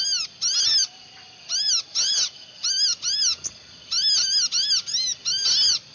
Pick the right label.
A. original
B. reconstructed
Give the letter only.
A